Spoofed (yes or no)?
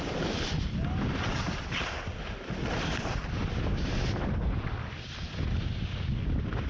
no